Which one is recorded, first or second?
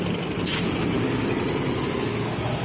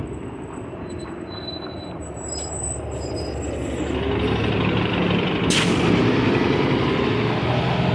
second